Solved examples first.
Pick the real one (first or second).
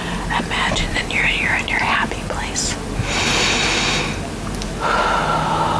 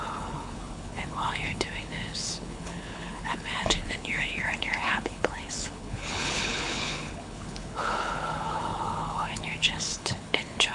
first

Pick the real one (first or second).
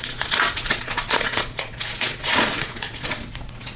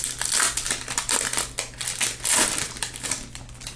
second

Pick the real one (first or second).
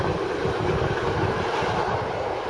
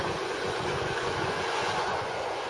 first